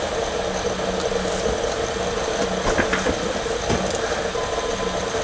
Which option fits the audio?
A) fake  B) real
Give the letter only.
B